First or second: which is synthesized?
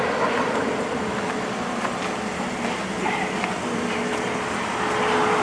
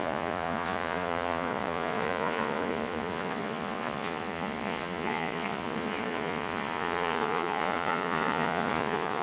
second